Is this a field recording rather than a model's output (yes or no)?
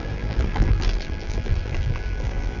no